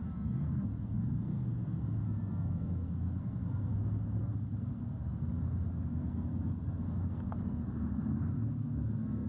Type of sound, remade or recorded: remade